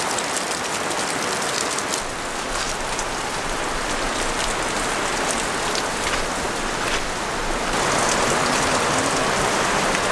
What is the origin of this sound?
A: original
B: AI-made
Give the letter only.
A